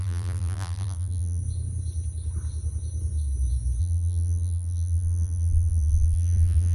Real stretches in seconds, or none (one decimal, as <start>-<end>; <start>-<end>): 1.4-3.8

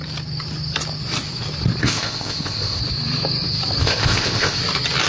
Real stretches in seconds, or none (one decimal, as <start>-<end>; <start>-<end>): 0.0-1.8; 2.8-3.8; 4.6-5.1

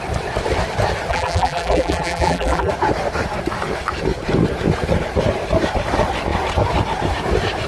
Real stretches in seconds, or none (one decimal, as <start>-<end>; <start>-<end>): 0.0-1.1; 2.7-7.7

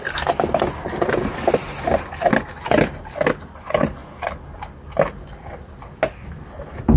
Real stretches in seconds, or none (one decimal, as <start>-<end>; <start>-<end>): 0.0-7.0

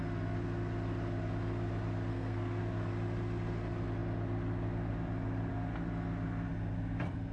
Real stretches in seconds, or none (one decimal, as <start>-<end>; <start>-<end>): 0.0-2.1; 2.6-7.3

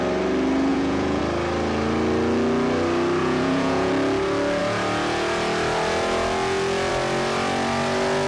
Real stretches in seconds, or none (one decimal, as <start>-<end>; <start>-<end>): 0.0-0.7; 1.2-3.2; 3.9-8.3